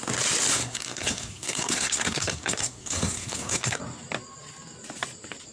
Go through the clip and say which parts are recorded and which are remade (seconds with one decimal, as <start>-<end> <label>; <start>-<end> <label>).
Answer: 0.0-0.5 recorded; 0.5-3.8 remade; 3.8-5.5 recorded